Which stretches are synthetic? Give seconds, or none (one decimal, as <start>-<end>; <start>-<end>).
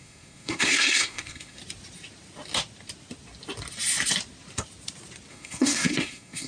0.0-1.6; 5.3-6.5